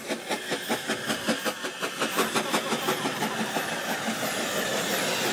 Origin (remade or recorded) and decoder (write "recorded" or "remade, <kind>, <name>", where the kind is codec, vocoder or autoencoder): recorded